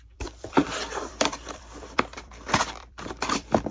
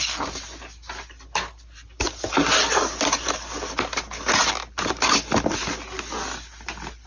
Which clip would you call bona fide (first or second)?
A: second